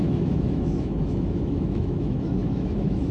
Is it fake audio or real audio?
fake